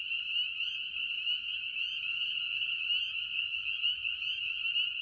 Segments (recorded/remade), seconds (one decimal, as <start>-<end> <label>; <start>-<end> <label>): 0.0-2.1 recorded; 2.1-2.8 remade; 2.8-5.0 recorded